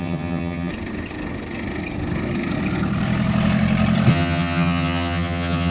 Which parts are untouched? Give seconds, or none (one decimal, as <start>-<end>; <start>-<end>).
0.7-4.1